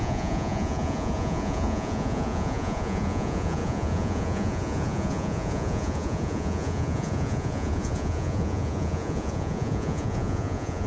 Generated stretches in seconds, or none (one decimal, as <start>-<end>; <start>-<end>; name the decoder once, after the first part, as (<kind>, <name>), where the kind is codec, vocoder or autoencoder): 0.0-10.9 (vocoder, Vocos)